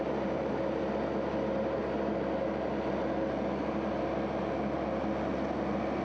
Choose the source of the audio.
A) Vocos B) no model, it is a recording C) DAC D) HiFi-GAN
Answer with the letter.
B